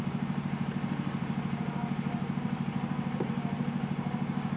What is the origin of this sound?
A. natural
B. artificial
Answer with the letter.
B